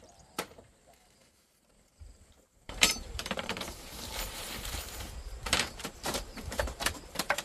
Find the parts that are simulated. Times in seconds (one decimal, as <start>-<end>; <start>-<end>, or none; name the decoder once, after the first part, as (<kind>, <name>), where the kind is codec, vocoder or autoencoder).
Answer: 0.0-5.2 (vocoder, BigVGAN v2); 5.7-7.4